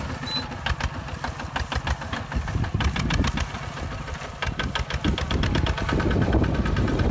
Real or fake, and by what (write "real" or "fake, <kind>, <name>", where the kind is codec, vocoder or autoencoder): real